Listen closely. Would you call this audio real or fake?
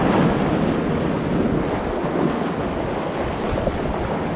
real